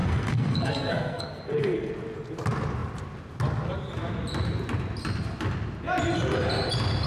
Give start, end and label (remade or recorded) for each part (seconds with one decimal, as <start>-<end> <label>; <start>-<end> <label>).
0.0-1.9 remade; 1.9-7.1 recorded